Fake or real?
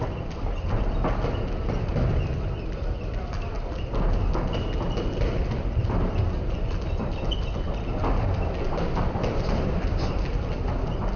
real